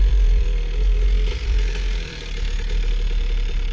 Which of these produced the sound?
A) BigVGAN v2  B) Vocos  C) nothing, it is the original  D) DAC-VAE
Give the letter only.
A